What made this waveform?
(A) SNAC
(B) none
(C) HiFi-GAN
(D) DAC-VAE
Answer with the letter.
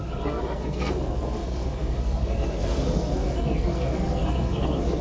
A